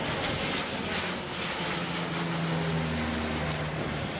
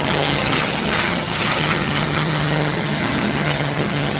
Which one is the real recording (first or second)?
first